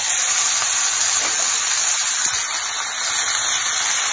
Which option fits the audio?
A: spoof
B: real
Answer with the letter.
B